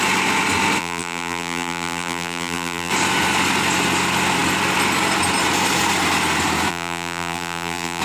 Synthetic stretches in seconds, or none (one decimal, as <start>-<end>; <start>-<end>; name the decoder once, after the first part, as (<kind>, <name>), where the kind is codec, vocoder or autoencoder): 0.8-2.9 (vocoder, BigVGAN v2); 6.7-8.0